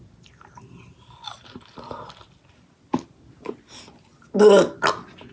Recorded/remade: recorded